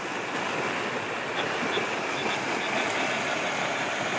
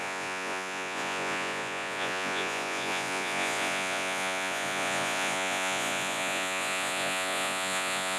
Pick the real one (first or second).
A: first